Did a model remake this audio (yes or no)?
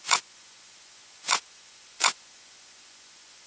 yes